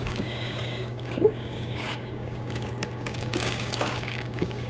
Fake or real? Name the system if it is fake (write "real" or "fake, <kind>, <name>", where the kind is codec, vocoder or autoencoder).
fake, codec, DAC